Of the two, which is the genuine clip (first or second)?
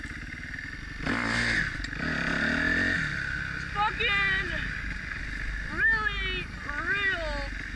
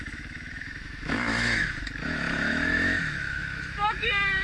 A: first